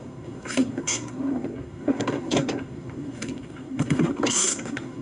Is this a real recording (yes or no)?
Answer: no